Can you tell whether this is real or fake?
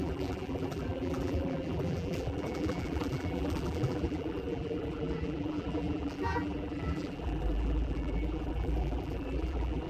fake